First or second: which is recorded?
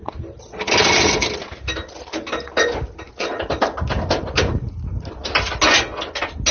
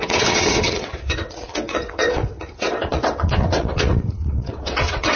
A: first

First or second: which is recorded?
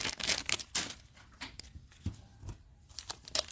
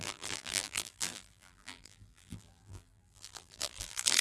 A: first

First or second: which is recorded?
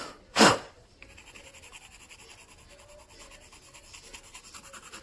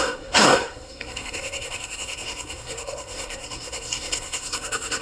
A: first